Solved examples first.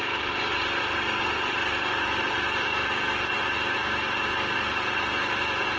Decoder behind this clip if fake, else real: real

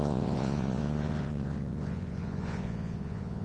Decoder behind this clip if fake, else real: fake, vocoder, Vocos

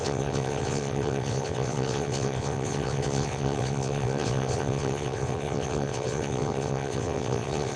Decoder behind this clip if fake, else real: fake, vocoder, WaveNeXt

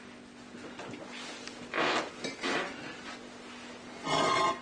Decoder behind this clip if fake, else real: real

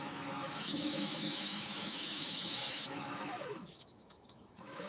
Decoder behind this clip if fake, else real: fake, autoencoder, DAC-VAE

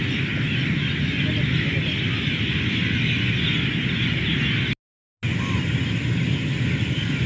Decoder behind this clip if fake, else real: real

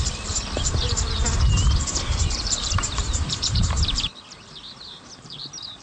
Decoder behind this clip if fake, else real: fake, vocoder, BigVGAN v2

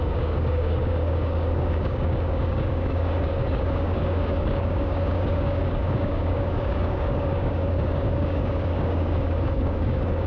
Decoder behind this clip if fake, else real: fake, codec, DAC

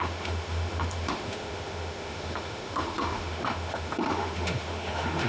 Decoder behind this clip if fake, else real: fake, autoencoder, DAC-VAE